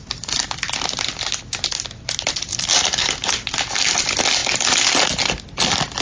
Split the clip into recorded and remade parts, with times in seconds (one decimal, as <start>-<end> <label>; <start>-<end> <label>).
0.0-6.0 recorded

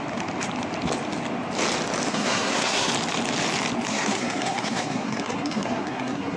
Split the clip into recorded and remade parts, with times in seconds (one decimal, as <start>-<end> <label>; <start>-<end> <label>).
0.0-2.1 recorded; 2.1-2.9 remade; 2.9-3.9 recorded; 3.9-6.4 remade

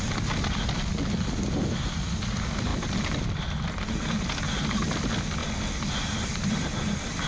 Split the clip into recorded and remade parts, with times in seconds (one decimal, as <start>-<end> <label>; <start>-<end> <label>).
0.0-7.3 recorded

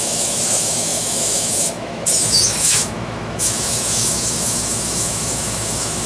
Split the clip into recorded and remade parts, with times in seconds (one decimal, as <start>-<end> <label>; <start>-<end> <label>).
0.0-6.1 remade

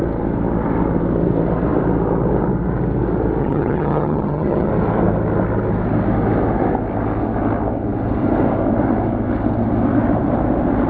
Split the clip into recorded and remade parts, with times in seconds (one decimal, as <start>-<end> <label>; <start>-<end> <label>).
0.0-3.4 recorded; 3.4-4.7 remade; 4.7-10.9 recorded

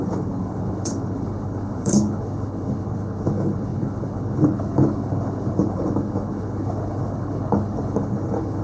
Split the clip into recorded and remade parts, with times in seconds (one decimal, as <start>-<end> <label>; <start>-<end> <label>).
0.0-8.6 remade